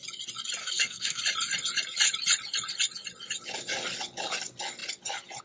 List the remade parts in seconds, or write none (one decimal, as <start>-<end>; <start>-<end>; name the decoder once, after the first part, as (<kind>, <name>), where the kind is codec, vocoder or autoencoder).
0.6-1.2 (codec, SNAC)

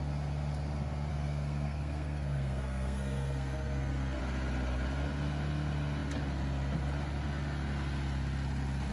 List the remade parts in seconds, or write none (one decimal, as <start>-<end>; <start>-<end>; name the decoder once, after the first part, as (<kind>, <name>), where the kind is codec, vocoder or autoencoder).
1.1-4.2 (codec, SNAC)

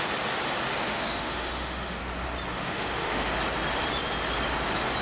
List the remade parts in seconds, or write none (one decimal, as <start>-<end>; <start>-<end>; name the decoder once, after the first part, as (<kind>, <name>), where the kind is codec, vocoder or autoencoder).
0.8-2.0 (autoencoder, DAC-VAE); 2.5-3.3

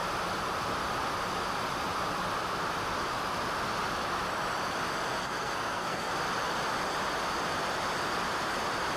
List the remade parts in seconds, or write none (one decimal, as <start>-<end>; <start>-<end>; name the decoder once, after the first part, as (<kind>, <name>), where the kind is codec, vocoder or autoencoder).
5.2-6.1 (codec, SNAC)